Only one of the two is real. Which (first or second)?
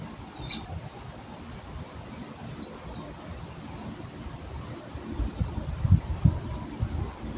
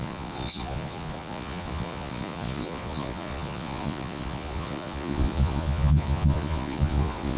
first